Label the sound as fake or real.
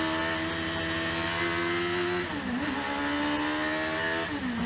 real